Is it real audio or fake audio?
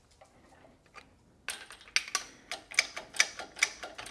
real